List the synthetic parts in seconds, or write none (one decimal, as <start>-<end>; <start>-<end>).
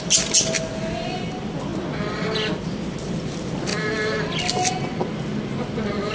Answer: none